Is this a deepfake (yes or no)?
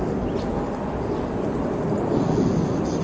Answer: no